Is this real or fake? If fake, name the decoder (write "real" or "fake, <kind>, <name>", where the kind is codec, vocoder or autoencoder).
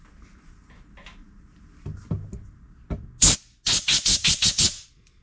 real